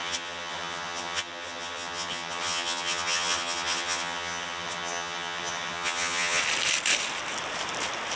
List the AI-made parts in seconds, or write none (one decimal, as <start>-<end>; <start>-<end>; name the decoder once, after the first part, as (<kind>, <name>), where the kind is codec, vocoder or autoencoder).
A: 0.0-6.4 (vocoder, HiFi-GAN)